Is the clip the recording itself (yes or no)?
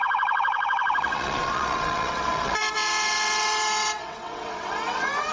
no